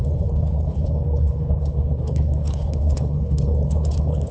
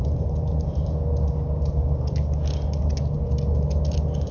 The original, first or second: second